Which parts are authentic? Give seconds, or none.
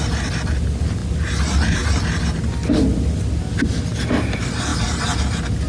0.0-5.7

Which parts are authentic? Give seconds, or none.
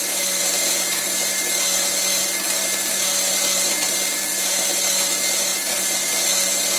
0.0-0.4; 1.2-5.5; 6.1-6.8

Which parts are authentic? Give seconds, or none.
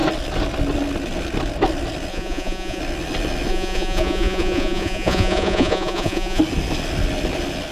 0.0-2.1; 2.8-3.5; 6.4-7.7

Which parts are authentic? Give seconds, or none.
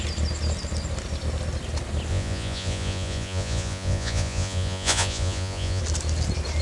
0.0-2.1; 5.8-6.6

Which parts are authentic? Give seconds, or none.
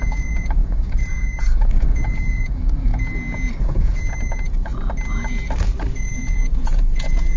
2.9-3.6; 4.7-5.9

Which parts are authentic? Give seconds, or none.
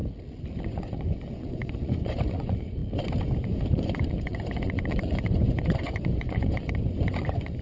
0.0-0.6; 2.8-3.4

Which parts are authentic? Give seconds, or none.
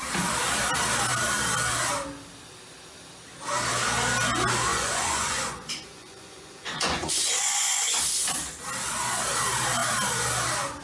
0.0-4.7; 8.0-10.8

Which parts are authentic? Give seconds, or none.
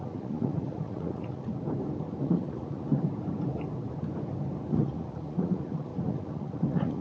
1.5-2.2; 2.9-4.7